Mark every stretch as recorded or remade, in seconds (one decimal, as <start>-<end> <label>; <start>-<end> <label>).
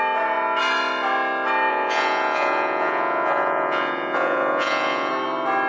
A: 0.0-1.7 recorded; 1.7-5.1 remade; 5.1-5.7 recorded